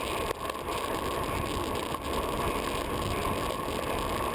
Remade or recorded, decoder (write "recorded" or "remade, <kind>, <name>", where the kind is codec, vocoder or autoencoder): recorded